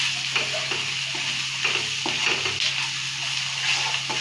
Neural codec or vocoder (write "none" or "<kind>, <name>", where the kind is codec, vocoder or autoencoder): none